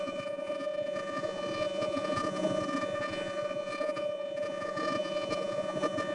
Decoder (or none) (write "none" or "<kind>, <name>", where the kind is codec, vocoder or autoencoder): vocoder, Vocos